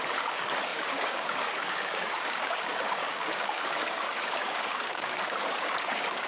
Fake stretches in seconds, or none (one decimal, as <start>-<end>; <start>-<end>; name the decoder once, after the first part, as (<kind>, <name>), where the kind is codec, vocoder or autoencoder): 0.0-6.3 (codec, DAC)